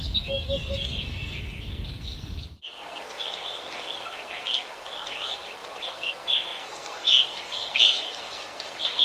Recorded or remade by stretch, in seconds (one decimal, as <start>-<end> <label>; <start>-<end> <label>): 0.0-9.0 remade